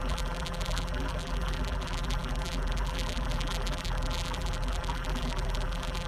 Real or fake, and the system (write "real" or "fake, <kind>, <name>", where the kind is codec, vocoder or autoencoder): fake, vocoder, BigVGAN v2